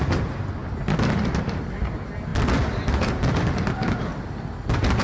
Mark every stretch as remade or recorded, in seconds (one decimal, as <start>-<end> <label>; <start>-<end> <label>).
0.0-5.0 recorded